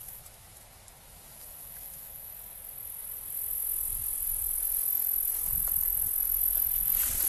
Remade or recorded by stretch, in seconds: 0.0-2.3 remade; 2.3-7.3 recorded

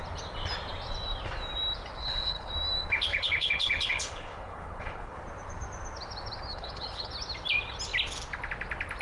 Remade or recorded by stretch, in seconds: 0.0-2.0 recorded; 2.0-2.5 remade; 2.5-3.1 recorded; 3.1-5.2 remade; 5.2-6.5 recorded; 6.5-7.1 remade; 7.1-9.0 recorded

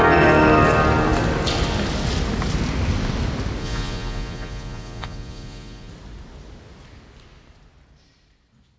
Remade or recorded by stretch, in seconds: 0.0-3.6 recorded; 3.6-5.9 remade; 5.9-8.8 recorded

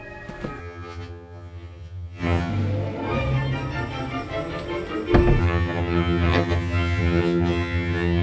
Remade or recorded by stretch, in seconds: 0.0-0.6 recorded; 0.6-2.5 remade; 2.5-5.4 recorded; 5.4-8.2 remade

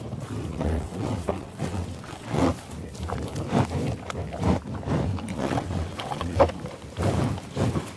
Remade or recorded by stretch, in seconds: 0.0-0.5 recorded; 0.5-2.5 remade; 2.5-5.3 recorded; 5.3-6.4 remade; 6.4-8.0 recorded

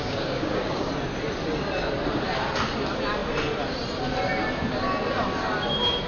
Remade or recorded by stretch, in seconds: 0.0-0.9 remade; 0.9-6.1 recorded

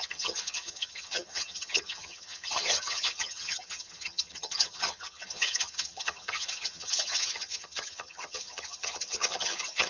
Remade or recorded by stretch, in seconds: 0.0-9.9 remade

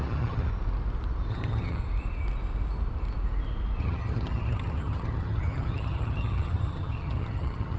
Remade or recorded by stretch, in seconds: 0.0-0.5 remade; 0.5-1.3 recorded; 1.3-1.8 remade; 1.8-3.8 recorded; 3.8-7.8 remade